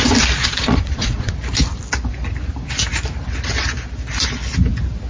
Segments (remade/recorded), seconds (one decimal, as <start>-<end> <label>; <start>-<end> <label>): 0.0-0.4 recorded; 0.4-1.3 remade; 1.3-5.1 recorded